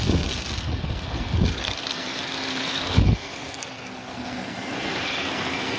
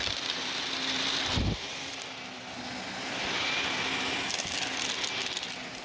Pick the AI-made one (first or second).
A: first